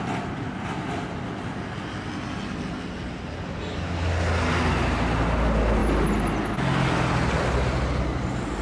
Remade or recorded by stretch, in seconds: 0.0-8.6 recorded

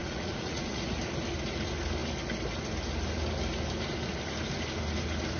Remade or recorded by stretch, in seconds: 0.0-1.0 remade; 1.0-5.4 recorded